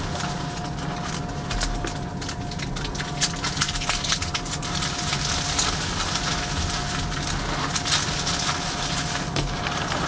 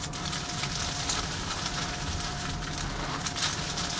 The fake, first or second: second